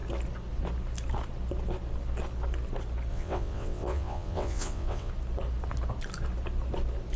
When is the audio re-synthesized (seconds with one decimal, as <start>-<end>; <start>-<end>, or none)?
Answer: 3.1-5.1